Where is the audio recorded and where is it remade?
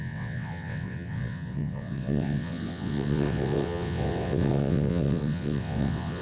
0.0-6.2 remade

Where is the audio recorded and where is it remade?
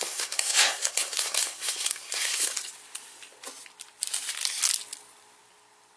0.0-2.5 remade; 2.5-6.0 recorded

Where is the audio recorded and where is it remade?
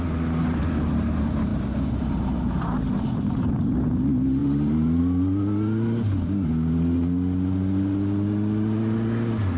0.0-1.5 recorded; 1.5-2.6 remade; 2.6-4.4 recorded; 4.4-5.0 remade; 5.0-9.6 recorded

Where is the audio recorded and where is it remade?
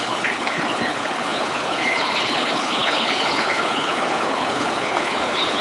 0.0-5.6 remade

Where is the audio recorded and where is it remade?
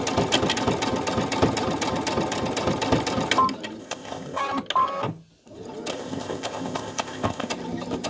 0.0-3.8 recorded; 3.8-4.4 remade; 4.4-5.9 recorded; 5.9-7.5 remade; 7.5-8.1 recorded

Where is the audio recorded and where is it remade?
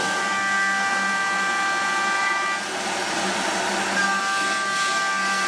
0.0-0.9 remade; 0.9-4.2 recorded; 4.2-5.5 remade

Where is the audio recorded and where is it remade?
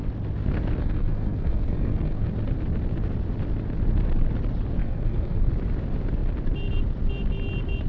0.0-0.8 recorded; 0.8-2.3 remade; 2.3-4.8 recorded; 4.8-5.5 remade; 5.5-7.9 recorded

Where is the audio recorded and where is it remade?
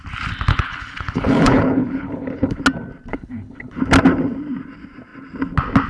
0.0-0.5 recorded; 0.5-2.6 remade; 2.6-3.1 recorded; 3.1-3.8 remade; 3.8-5.9 recorded